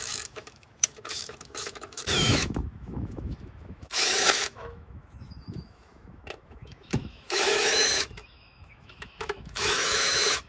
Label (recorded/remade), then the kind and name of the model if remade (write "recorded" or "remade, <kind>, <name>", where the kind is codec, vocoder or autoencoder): remade, autoencoder, DAC-VAE